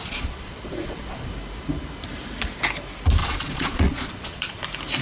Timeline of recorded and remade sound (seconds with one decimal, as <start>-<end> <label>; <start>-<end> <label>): 0.0-1.3 remade; 1.3-3.2 recorded; 3.2-4.6 remade; 4.6-5.0 recorded